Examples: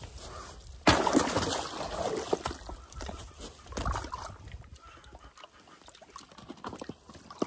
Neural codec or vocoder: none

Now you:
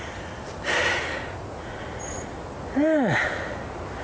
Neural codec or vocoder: none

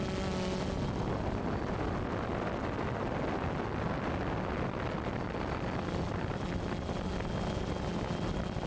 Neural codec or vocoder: none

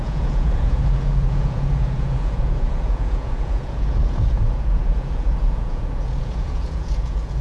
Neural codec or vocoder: vocoder, Vocos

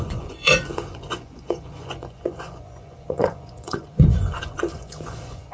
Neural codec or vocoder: vocoder, Vocos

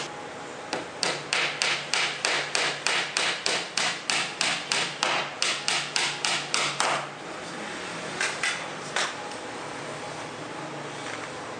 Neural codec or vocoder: none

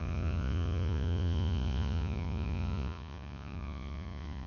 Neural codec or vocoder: vocoder, Vocos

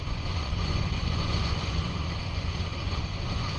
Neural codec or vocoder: vocoder, Vocos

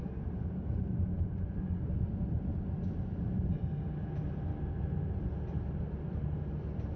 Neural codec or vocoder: none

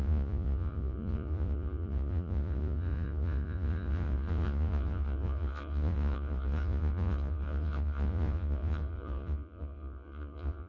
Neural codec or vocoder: vocoder, Vocos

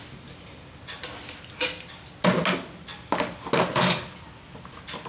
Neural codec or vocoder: none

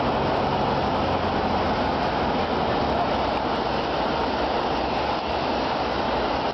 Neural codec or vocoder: none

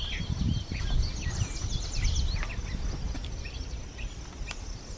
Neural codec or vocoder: none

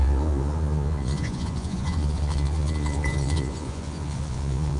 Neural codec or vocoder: vocoder, Vocos